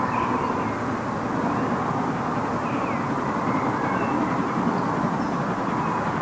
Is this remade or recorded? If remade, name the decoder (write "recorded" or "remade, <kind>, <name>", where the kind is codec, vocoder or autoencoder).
recorded